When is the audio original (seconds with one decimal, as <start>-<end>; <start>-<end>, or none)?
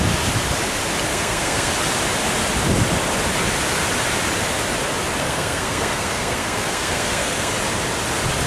0.0-1.1; 1.7-5.2; 7.5-8.5